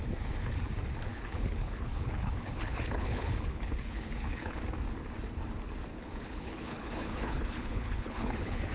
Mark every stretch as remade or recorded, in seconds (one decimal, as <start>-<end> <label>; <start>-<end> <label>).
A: 0.0-1.1 recorded; 1.1-4.6 remade; 4.6-5.9 recorded; 5.9-8.7 remade